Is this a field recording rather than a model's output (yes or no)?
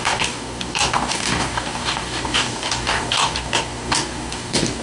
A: no